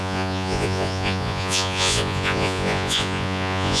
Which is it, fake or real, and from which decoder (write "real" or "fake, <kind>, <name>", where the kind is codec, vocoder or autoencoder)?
fake, vocoder, Vocos